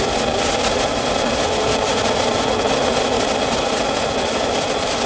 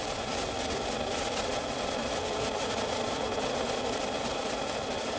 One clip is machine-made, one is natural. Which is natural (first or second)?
first